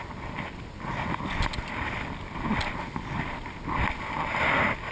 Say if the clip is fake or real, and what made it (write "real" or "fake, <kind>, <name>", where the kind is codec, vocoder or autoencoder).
real